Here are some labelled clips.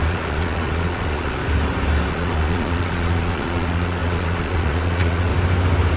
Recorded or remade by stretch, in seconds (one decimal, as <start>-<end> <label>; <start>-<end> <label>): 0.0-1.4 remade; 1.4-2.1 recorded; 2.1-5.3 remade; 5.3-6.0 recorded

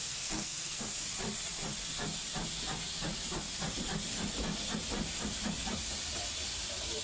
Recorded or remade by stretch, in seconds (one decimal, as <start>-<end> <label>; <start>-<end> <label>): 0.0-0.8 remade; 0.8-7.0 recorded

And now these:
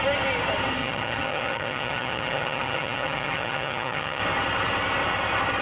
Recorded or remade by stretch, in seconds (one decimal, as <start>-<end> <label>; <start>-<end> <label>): 0.0-0.8 recorded; 0.8-4.2 remade; 4.2-5.6 recorded